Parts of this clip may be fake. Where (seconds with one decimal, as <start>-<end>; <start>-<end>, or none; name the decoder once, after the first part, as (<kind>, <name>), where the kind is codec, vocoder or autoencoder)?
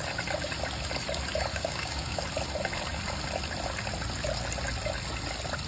1.5-2.2 (codec, DAC)